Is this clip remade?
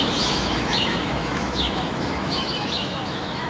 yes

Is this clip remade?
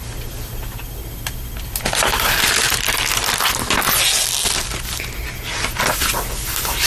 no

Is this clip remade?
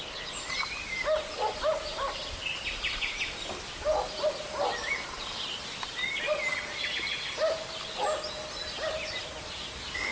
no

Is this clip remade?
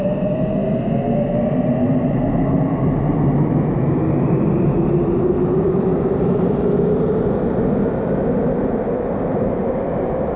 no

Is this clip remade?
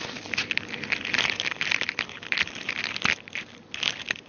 no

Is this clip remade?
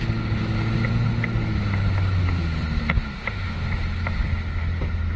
no